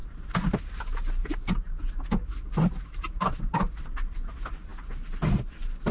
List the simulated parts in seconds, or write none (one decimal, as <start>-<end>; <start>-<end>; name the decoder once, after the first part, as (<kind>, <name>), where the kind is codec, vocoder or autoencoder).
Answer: none